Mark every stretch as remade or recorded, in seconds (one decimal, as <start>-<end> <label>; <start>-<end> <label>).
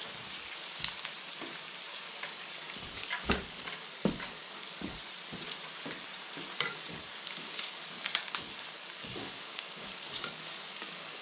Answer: 0.0-1.9 recorded; 1.9-5.0 remade; 5.0-6.7 recorded; 6.7-11.2 remade